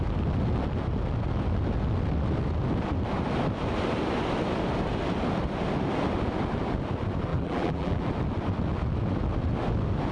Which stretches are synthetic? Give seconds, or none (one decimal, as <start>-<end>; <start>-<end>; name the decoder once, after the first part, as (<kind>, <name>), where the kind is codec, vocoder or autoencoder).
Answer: 7.3-8.1 (vocoder, BigVGAN v2)